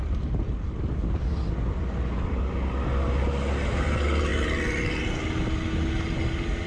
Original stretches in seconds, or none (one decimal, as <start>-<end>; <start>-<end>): 0.0-6.7